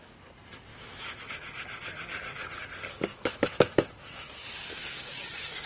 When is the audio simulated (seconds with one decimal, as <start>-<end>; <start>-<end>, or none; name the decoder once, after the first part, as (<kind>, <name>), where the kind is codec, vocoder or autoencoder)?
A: 0.7-1.3 (autoencoder, DAC-VAE); 3.1-4.3